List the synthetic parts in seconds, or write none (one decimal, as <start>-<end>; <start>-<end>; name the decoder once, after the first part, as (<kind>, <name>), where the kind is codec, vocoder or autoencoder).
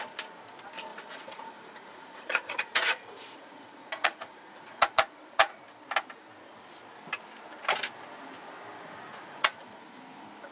0.9-5.6 (vocoder, Vocos); 9.1-10.0